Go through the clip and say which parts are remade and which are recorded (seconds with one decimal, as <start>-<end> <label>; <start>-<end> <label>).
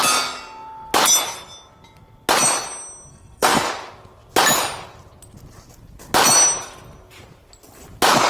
0.0-3.1 recorded; 3.1-3.7 remade; 3.7-8.3 recorded